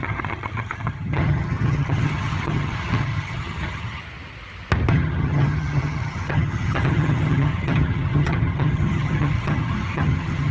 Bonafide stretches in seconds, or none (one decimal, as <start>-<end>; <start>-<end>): 4.0-4.9